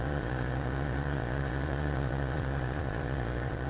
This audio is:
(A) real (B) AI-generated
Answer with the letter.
B